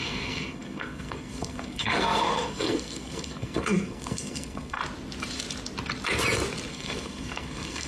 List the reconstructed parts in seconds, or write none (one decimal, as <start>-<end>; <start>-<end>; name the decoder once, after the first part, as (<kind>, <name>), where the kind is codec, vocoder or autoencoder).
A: 0.0-4.8 (codec, SNAC); 6.7-7.9